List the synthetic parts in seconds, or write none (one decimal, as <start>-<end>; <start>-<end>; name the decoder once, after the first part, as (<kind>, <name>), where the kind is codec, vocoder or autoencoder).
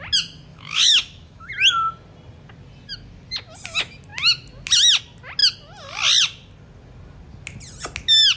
0.5-1.5 (autoencoder, DAC-VAE)